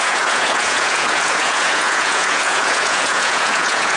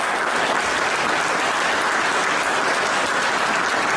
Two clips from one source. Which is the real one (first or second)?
second